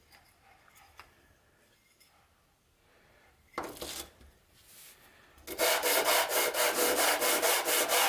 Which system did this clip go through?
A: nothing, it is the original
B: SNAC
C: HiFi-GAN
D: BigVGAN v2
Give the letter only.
A